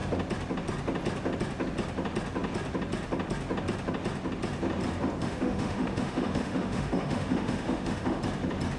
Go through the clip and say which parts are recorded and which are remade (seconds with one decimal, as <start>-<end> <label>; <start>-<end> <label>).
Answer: 0.0-5.2 recorded; 5.2-8.2 remade; 8.2-8.8 recorded